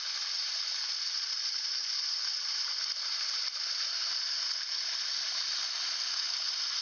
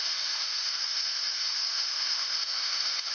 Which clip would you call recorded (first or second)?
first